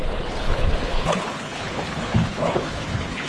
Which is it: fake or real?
fake